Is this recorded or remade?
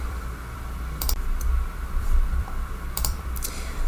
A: remade